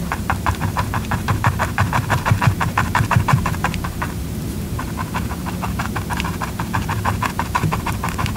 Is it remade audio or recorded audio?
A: remade